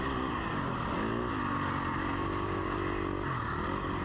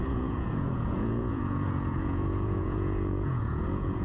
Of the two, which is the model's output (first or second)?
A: second